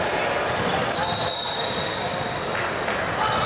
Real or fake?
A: real